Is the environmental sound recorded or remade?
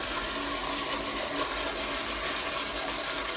recorded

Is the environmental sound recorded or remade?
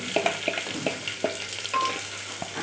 recorded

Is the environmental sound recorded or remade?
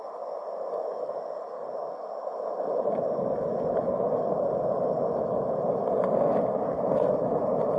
recorded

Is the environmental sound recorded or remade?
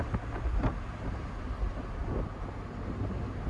recorded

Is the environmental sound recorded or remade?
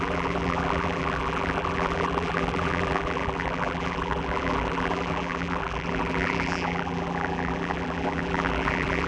remade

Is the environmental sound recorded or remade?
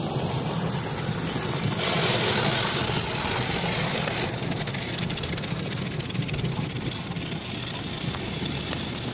recorded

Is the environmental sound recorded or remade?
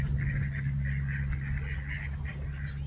recorded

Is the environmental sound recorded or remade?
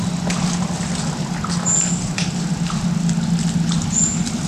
recorded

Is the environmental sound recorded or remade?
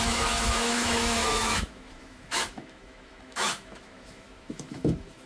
remade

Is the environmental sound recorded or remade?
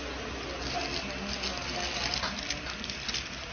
recorded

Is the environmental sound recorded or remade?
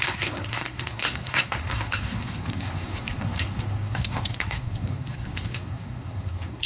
remade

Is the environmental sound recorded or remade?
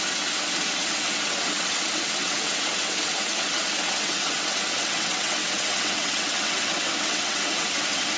remade